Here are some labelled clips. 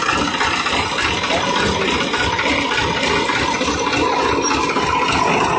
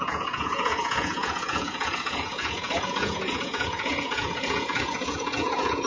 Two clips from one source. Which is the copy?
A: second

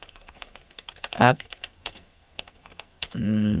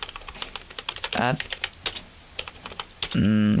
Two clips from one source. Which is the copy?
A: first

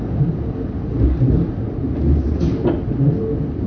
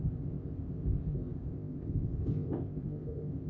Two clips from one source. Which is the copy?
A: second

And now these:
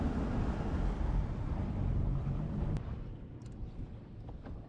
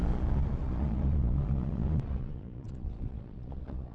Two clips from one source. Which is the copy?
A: second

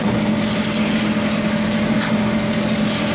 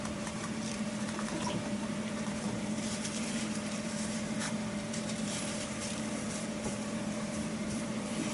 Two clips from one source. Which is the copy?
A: second